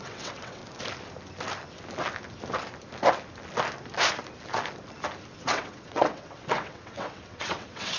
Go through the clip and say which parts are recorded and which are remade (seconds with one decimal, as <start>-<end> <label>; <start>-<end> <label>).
0.0-0.6 remade; 0.6-5.4 recorded; 5.4-8.0 remade